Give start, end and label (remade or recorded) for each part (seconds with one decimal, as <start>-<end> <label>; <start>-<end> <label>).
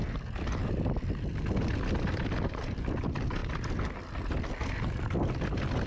0.0-5.9 recorded